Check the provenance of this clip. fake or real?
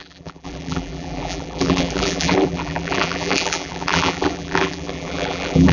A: fake